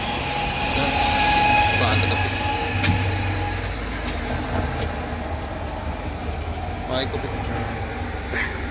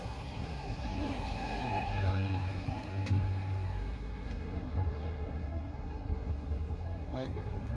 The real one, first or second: first